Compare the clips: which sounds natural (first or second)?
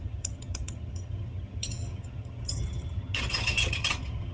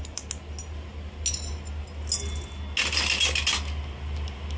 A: second